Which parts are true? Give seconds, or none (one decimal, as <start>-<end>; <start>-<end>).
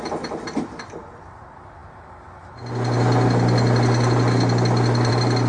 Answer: 0.0-5.5